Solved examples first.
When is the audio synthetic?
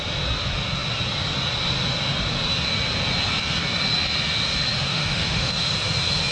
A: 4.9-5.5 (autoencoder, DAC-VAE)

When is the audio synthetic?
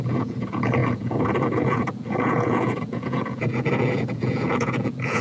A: 0.0-5.2 (vocoder, Vocos)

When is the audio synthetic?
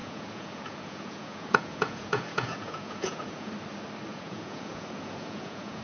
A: 0.0-3.5 (vocoder, Vocos); 4.1-5.8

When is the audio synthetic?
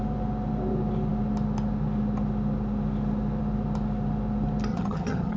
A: 4.7-5.4 (vocoder, HiFi-GAN)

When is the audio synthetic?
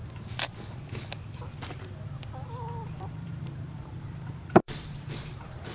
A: 3.0-5.7 (vocoder, BigVGAN v2)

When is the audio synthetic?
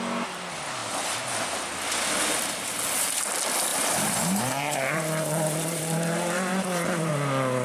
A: 3.7-7.1 (vocoder, BigVGAN v2)